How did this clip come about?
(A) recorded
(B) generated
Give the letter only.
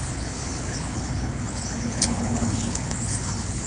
B